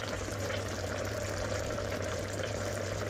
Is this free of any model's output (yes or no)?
no